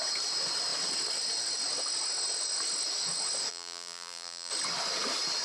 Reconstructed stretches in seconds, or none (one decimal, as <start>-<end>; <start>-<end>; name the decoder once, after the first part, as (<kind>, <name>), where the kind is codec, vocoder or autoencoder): 3.5-4.5 (vocoder, BigVGAN v2)

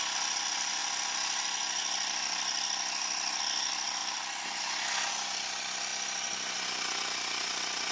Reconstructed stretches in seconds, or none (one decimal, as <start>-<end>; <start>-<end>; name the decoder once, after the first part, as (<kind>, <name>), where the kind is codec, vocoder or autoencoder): none

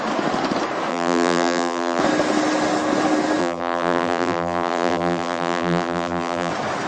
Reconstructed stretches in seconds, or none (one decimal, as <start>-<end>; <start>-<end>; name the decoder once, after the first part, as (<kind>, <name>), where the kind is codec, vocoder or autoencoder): 0.9-2.0 (vocoder, BigVGAN v2); 3.4-6.5

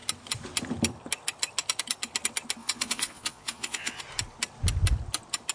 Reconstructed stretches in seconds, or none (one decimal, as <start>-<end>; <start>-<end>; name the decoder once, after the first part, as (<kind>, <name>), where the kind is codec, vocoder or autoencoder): 2.6-4.0 (vocoder, Vocos)

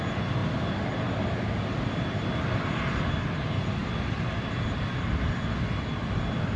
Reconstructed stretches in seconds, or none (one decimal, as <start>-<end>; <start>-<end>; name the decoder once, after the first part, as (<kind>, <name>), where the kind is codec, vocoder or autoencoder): none

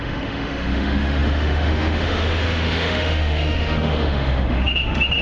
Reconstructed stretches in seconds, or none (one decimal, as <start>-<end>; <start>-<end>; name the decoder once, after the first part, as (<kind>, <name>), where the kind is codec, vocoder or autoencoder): 0.0-5.2 (autoencoder, DAC-VAE)